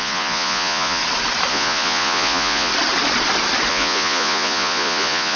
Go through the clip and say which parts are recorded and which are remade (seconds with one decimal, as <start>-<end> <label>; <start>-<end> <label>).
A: 0.0-1.0 remade; 1.0-1.5 recorded; 1.5-2.7 remade; 2.7-3.7 recorded; 3.7-5.4 remade